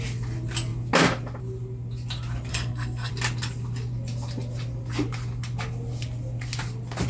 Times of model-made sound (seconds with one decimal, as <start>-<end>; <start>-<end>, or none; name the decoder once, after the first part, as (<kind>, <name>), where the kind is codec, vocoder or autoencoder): 2.5-3.1 (codec, SNAC)